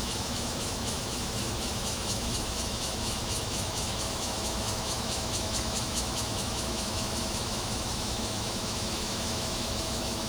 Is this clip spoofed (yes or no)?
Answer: yes